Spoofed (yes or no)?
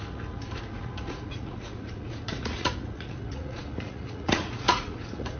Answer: yes